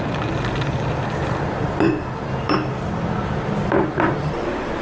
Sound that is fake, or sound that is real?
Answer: fake